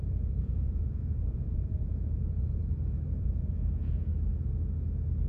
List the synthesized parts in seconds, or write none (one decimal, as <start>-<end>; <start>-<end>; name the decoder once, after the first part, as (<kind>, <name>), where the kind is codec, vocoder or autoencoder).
0.0-2.6 (vocoder, Vocos); 3.2-4.1